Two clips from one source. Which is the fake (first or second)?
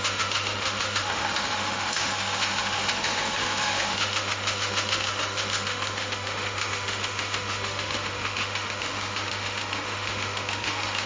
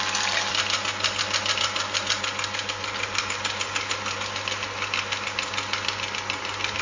first